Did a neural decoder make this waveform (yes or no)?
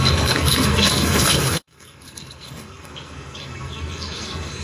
yes